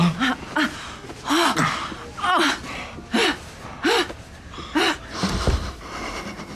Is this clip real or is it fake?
real